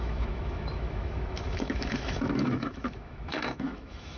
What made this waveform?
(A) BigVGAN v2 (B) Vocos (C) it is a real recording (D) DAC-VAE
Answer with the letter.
D